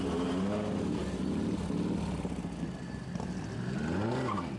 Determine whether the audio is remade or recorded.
recorded